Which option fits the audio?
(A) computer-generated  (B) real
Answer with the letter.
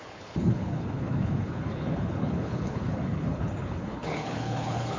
A